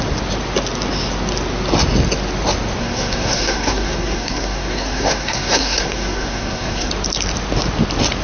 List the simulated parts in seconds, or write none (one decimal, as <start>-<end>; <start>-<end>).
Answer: 2.8-6.9